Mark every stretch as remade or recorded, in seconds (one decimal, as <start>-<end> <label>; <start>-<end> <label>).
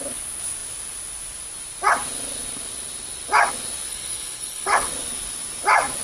0.0-3.9 recorded; 3.9-4.9 remade; 4.9-6.0 recorded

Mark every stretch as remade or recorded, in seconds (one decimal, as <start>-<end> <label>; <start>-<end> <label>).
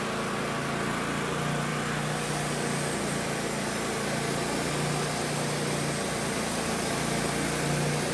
0.0-8.1 recorded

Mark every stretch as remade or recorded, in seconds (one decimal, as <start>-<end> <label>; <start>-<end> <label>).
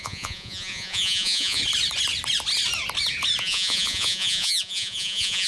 0.0-1.6 remade; 1.6-3.4 recorded; 3.4-5.5 remade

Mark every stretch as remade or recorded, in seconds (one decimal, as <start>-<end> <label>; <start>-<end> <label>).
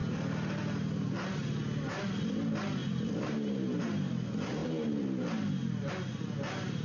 0.0-2.8 recorded; 2.8-3.9 remade; 3.9-6.8 recorded